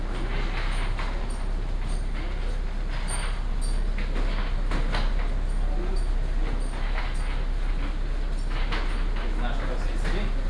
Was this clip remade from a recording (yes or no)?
no